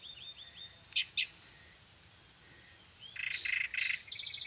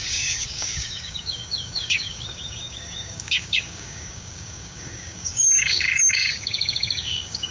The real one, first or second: first